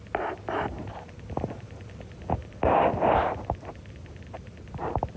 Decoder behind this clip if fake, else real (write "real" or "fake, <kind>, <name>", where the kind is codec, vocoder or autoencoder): real